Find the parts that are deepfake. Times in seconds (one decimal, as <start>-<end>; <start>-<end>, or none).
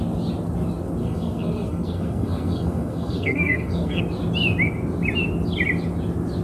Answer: 1.0-4.0